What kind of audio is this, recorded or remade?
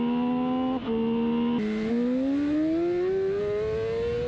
recorded